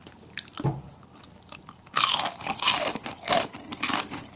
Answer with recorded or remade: recorded